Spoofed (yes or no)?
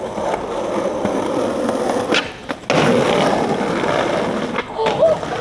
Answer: no